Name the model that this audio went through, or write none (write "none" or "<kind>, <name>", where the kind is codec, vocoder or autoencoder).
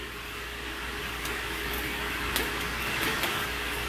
codec, DAC